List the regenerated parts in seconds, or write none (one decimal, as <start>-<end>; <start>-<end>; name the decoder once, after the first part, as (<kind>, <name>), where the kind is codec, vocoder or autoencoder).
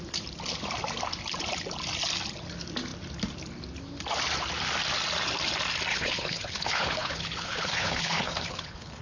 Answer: 5.9-9.0 (codec, HILCodec)